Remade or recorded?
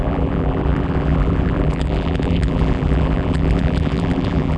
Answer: remade